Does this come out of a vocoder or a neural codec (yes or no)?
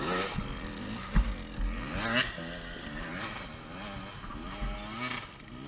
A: no